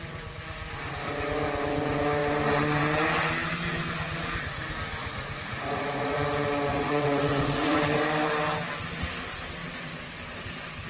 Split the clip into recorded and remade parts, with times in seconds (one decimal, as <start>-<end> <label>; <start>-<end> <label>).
0.0-5.0 recorded; 5.0-6.2 remade; 6.2-6.7 recorded; 6.7-7.8 remade; 7.8-10.9 recorded